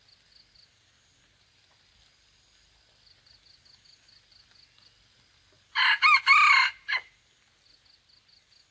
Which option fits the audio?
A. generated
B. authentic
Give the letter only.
B